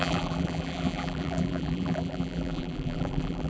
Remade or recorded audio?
remade